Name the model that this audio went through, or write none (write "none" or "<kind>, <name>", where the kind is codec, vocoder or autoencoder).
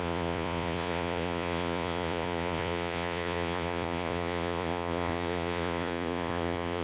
vocoder, Vocos